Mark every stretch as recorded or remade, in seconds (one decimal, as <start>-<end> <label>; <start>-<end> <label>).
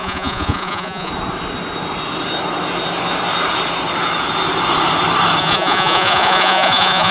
0.0-1.1 remade; 1.1-5.4 recorded; 5.4-7.1 remade